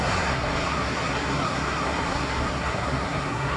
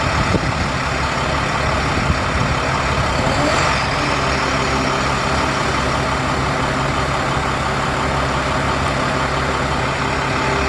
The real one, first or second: second